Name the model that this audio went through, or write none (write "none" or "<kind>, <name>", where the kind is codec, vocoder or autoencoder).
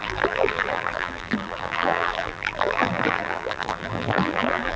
vocoder, BigVGAN v2